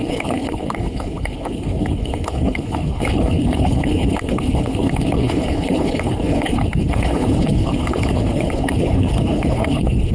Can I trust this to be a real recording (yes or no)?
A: no